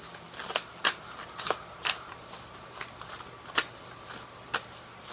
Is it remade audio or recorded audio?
recorded